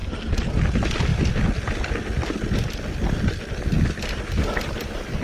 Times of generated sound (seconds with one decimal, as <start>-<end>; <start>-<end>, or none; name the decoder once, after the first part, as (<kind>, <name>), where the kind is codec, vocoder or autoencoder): none